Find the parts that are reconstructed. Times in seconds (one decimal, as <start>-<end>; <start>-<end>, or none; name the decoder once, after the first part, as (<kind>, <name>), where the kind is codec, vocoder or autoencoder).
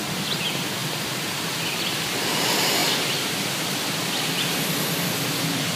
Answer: 0.8-1.4 (vocoder, BigVGAN v2)